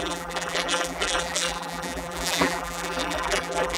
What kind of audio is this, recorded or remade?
remade